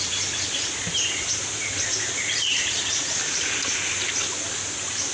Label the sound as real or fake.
real